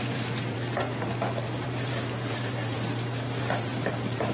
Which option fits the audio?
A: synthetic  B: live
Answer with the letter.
A